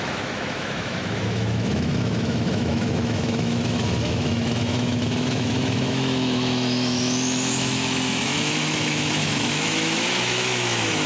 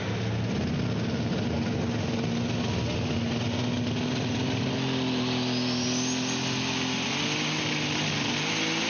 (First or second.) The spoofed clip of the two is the first